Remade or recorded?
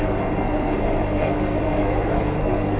remade